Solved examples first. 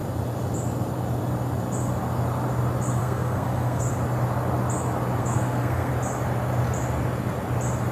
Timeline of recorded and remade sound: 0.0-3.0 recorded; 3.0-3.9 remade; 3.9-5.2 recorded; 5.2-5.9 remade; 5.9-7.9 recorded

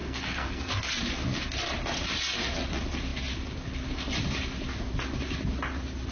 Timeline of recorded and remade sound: 0.0-0.7 remade; 0.7-6.1 recorded

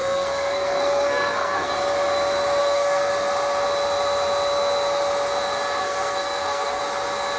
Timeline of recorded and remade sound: 0.0-1.7 remade; 1.7-2.6 recorded; 2.6-3.1 remade; 3.1-5.8 recorded; 5.8-6.8 remade; 6.8-7.4 recorded

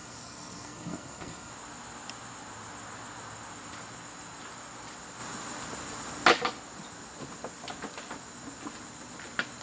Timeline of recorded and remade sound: 0.0-1.5 remade; 1.5-9.6 recorded

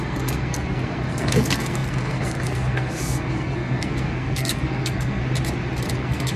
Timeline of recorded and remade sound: 0.0-5.2 remade; 5.2-5.9 recorded; 5.9-6.4 remade

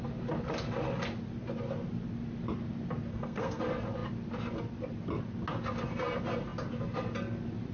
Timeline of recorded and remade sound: 0.0-3.1 recorded; 3.1-3.6 remade; 3.6-7.7 recorded

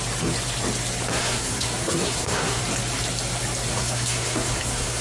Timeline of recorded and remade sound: 0.0-1.1 recorded; 1.1-2.6 remade; 2.6-3.7 recorded; 3.7-5.0 remade